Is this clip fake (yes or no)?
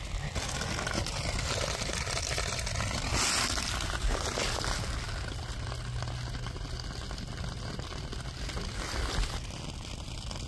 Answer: no